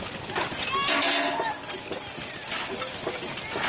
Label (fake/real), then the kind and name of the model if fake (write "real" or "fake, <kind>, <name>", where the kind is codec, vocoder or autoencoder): real